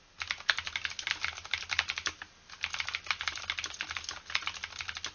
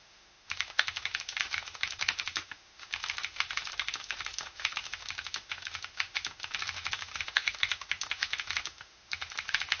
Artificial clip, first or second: second